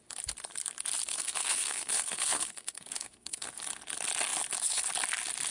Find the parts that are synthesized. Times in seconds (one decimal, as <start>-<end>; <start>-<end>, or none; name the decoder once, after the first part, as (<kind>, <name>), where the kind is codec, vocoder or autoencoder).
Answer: 1.1-3.5 (codec, SNAC)